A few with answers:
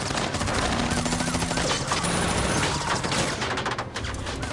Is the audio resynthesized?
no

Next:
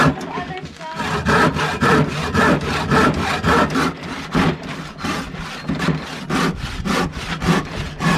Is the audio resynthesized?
no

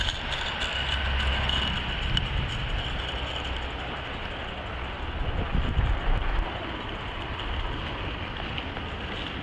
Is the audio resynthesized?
no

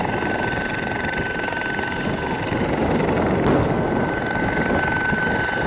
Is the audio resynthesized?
no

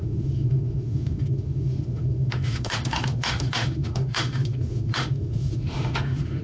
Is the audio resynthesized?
yes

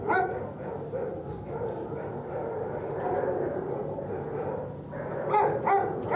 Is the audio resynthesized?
no